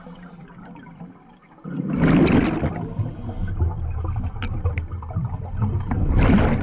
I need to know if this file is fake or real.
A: real